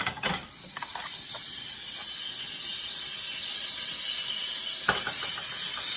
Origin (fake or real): real